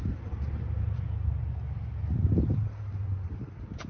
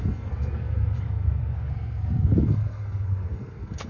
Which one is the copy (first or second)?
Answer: second